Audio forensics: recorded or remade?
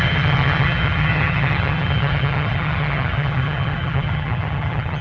remade